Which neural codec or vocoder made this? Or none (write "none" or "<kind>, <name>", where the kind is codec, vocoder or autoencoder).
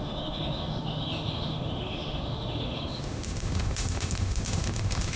autoencoder, DAC-VAE